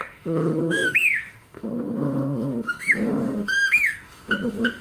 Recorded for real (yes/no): no